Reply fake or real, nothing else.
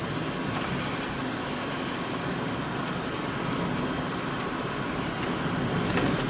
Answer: real